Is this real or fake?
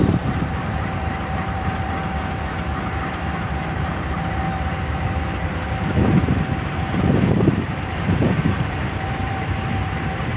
fake